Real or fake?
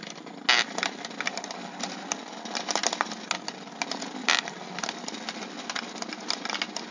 real